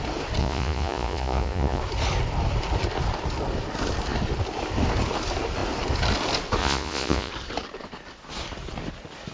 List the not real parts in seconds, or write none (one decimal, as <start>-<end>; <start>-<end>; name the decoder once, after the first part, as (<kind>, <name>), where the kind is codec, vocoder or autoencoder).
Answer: 0.4-1.8 (vocoder, Vocos); 6.6-7.3